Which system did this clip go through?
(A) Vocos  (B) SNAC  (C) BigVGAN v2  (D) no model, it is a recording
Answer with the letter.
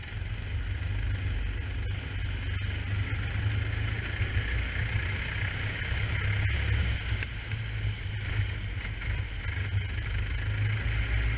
D